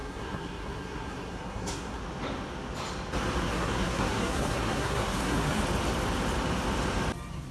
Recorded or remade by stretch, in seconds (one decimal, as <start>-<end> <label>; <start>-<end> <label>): 0.0-2.0 remade; 2.0-3.4 recorded; 3.4-5.6 remade; 5.6-7.5 recorded